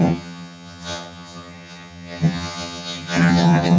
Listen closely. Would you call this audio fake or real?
fake